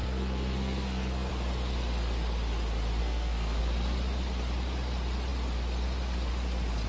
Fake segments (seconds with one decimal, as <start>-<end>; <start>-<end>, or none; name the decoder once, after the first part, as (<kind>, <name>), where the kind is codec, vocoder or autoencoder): 0.0-1.3 (codec, SNAC); 3.0-3.6